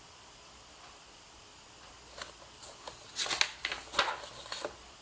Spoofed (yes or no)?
no